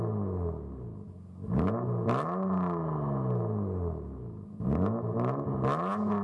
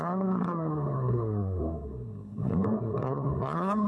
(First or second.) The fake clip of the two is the second